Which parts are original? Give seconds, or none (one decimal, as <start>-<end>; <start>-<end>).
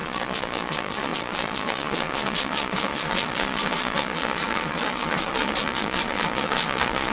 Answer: none